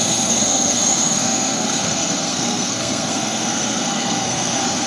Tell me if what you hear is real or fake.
fake